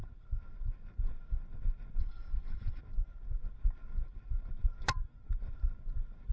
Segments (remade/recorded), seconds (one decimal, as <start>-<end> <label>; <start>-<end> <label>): 0.0-2.0 recorded; 2.0-2.8 remade; 2.8-6.3 recorded